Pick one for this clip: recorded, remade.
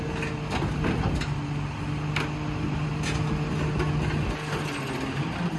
recorded